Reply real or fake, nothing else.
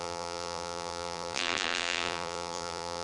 fake